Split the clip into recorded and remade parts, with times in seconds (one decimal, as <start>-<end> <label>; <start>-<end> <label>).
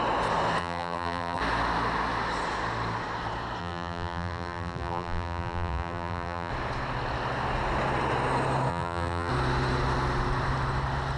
0.0-0.6 recorded; 0.6-1.4 remade; 1.4-3.6 recorded; 3.6-6.5 remade; 6.5-8.7 recorded; 8.7-9.3 remade; 9.3-11.2 recorded